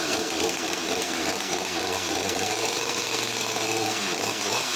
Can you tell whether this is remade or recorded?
remade